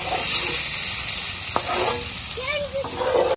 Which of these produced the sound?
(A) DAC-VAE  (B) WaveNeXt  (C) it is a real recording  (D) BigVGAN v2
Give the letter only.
C